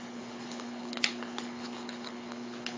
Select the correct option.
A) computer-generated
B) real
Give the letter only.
A